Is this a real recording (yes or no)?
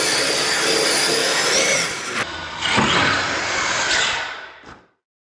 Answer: yes